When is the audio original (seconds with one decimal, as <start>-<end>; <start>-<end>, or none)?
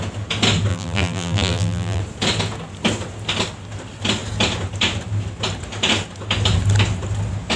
0.0-0.7; 2.0-7.6